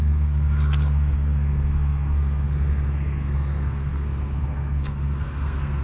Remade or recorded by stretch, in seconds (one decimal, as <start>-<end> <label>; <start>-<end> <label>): 0.0-5.8 remade